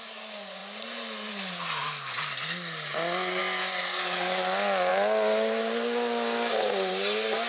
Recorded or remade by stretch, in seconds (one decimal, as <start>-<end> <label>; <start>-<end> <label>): 0.0-7.5 recorded